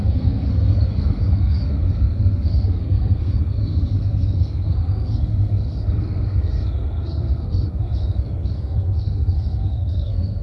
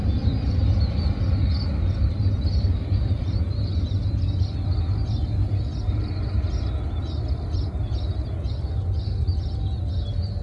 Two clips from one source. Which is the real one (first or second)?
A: second